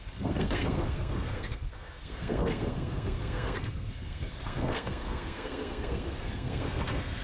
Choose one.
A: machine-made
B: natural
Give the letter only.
A